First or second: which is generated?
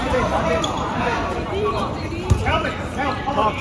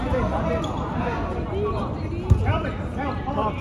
first